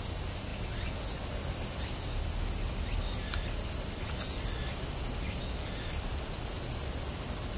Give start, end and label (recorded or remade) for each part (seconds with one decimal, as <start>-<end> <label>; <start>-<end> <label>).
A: 0.0-7.6 recorded